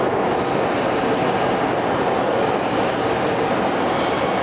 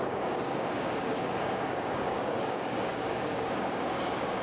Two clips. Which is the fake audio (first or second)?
second